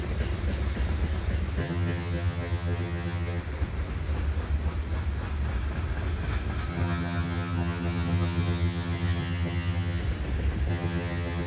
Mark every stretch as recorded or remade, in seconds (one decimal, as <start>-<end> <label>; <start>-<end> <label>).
0.0-1.6 recorded; 1.6-3.4 remade; 3.4-6.7 recorded; 6.7-10.0 remade; 10.0-10.7 recorded; 10.7-11.5 remade